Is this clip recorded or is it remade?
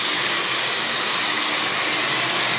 recorded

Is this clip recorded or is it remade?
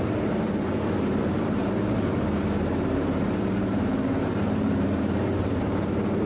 remade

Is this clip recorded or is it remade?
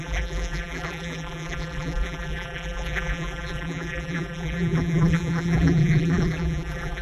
remade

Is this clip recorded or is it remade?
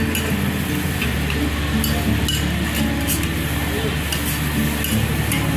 recorded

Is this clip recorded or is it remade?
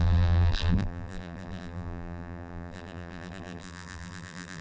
remade